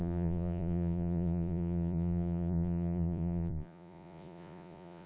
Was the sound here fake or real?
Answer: fake